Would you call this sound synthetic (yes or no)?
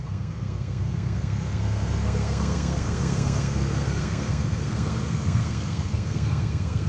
yes